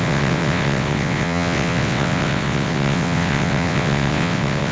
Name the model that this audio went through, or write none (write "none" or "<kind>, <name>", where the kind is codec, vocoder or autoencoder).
vocoder, WaveNeXt